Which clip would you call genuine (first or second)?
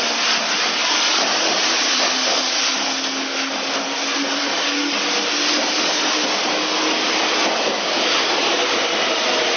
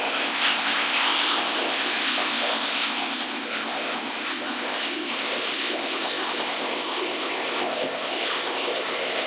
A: first